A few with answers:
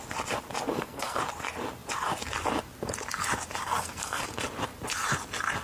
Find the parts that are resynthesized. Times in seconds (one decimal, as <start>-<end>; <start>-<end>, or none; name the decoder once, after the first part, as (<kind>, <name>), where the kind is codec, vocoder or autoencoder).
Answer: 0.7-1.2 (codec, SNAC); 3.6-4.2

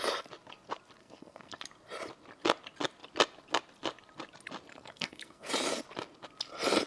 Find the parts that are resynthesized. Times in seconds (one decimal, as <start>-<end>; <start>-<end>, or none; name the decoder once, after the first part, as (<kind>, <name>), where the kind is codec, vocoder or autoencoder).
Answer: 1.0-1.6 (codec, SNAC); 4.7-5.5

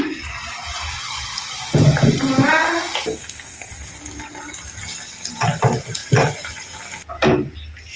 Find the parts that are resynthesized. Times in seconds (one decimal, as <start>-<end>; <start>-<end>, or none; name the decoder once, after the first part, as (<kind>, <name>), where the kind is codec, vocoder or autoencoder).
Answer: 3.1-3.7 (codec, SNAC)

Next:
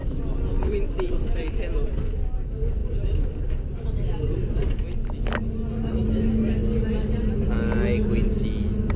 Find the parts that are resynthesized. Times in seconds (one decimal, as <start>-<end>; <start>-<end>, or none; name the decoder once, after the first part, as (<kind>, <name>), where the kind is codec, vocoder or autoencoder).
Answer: none